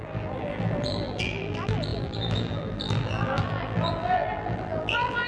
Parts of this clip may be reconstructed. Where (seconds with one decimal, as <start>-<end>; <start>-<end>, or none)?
0.0-5.3